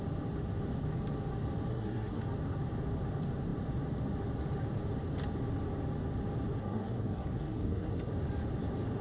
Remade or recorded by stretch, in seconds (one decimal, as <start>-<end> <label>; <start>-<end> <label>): 0.0-1.7 recorded; 1.7-2.2 remade; 2.2-6.6 recorded; 6.6-8.1 remade; 8.1-9.0 recorded